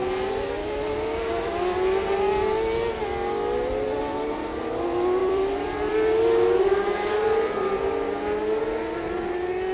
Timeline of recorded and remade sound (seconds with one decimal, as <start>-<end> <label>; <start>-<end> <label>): 0.0-5.2 recorded; 5.2-5.9 remade; 5.9-9.7 recorded